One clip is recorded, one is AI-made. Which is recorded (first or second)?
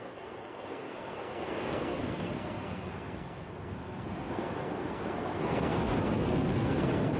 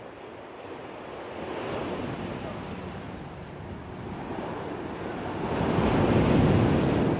second